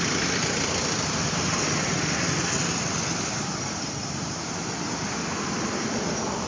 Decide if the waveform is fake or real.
real